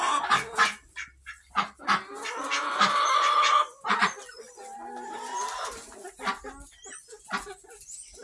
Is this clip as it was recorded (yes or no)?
yes